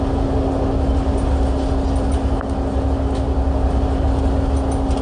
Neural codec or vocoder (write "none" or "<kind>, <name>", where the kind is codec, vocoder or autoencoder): none